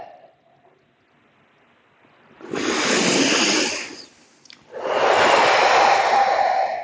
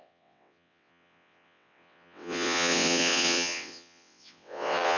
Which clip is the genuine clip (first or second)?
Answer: first